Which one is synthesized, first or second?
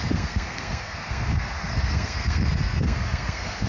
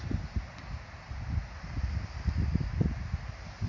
first